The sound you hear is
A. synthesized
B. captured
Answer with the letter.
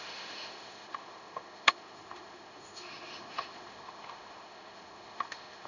A